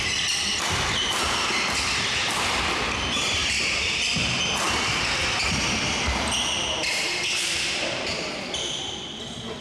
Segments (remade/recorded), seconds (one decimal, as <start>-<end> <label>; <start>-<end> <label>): 0.0-3.4 recorded; 3.4-4.1 remade; 4.1-9.6 recorded